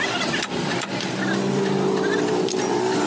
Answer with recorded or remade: recorded